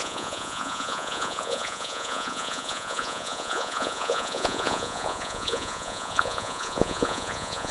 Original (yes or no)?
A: no